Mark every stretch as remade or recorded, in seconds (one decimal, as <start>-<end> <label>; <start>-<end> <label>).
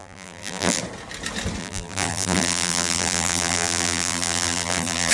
0.0-0.8 remade; 0.8-1.6 recorded; 1.6-5.1 remade